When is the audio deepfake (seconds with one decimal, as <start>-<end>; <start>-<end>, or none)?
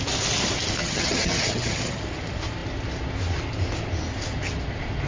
0.8-2.0